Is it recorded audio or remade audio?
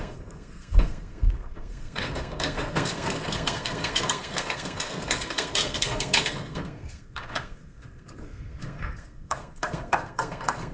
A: remade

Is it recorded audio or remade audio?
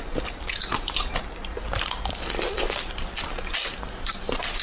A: recorded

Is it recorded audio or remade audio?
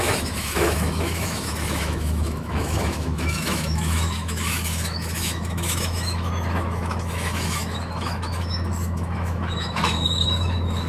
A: remade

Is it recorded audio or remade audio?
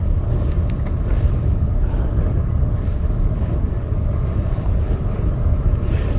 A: remade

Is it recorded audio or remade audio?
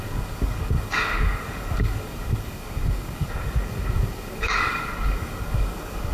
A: remade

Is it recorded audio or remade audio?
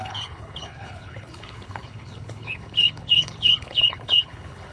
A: remade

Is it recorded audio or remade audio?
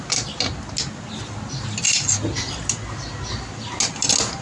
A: recorded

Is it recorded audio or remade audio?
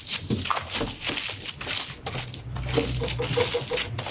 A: recorded